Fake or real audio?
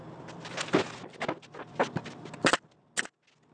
real